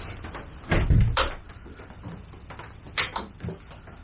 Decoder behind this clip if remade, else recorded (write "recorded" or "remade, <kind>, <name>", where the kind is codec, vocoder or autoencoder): recorded